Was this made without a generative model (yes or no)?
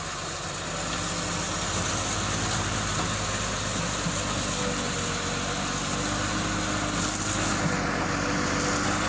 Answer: yes